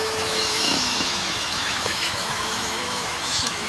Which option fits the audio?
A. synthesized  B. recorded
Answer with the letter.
A